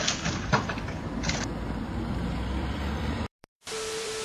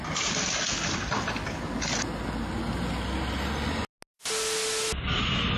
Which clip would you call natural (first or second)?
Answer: second